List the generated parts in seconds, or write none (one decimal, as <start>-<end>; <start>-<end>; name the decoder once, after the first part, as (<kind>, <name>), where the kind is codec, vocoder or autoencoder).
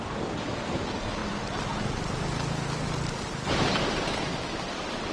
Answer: 0.0-5.1 (vocoder, BigVGAN v2)